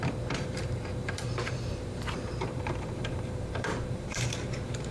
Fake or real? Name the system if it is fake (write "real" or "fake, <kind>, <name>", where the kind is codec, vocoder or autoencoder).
fake, vocoder, BigVGAN v2